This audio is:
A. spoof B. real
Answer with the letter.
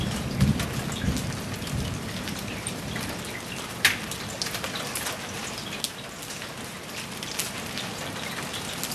B